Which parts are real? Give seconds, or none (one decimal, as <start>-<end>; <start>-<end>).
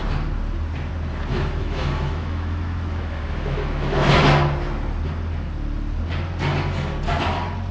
0.0-1.3; 4.2-7.7